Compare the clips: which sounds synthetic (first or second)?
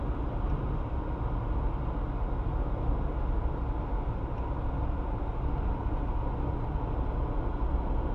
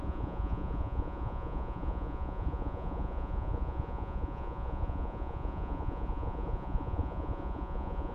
second